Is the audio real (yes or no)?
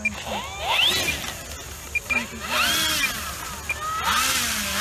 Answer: yes